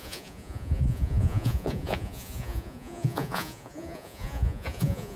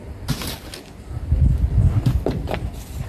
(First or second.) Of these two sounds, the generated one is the first